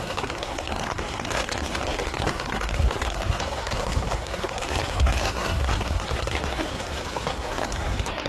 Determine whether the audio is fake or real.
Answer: fake